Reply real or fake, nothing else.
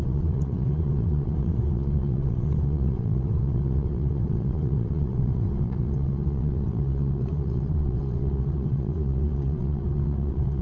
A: fake